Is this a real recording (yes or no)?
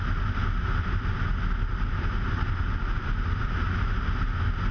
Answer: yes